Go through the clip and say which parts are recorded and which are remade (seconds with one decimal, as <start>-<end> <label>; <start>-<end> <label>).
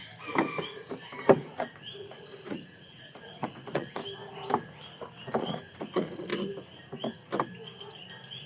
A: 0.0-1.4 recorded; 1.4-4.0 remade; 4.0-5.4 recorded; 5.4-6.3 remade; 6.3-8.5 recorded